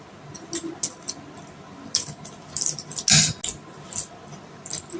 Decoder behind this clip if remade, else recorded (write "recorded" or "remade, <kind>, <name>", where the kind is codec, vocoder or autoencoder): recorded